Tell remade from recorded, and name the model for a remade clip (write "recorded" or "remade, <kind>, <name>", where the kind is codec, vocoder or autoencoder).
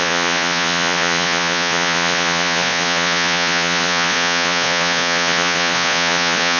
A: remade, vocoder, Vocos